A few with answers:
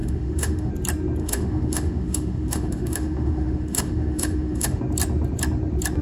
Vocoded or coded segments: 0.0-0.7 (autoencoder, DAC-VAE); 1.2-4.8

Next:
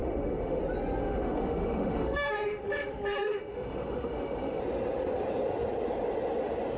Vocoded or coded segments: 0.0-0.6 (autoencoder, DAC-VAE); 1.0-4.6

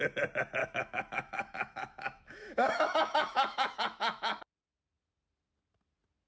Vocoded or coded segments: 0.6-4.4 (autoencoder, DAC-VAE)

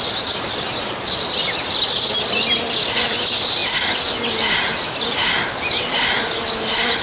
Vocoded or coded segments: none

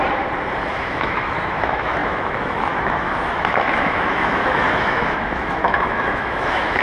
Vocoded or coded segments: 0.7-6.8 (autoencoder, DAC-VAE)

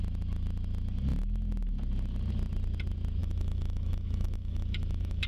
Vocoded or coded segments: 3.2-5.3 (autoencoder, DAC-VAE)

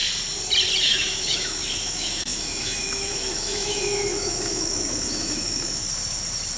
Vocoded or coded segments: 0.8-5.8 (autoencoder, DAC-VAE)

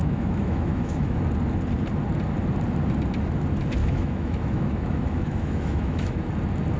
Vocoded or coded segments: 0.0-1.2 (autoencoder, DAC-VAE); 3.8-6.3